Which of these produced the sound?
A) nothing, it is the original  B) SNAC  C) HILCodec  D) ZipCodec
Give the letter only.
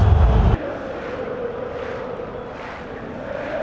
A